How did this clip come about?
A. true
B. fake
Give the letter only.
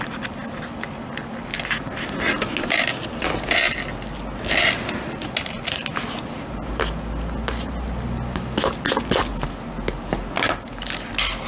A